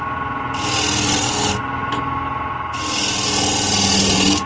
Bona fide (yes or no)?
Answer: yes